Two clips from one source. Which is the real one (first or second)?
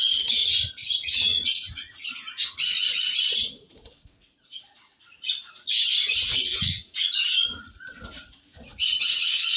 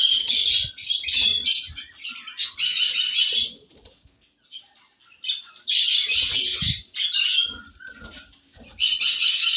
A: second